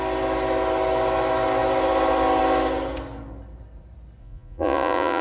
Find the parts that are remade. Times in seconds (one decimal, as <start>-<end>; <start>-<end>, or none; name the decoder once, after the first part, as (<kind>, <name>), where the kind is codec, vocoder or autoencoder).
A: 4.2-5.2 (vocoder, Vocos)